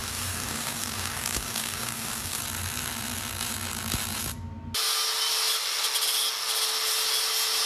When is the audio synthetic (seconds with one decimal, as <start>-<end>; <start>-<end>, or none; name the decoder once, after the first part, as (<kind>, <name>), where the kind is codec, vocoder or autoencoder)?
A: 0.0-2.4 (codec, DAC)